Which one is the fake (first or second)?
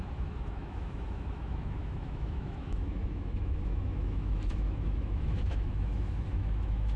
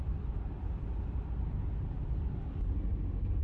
first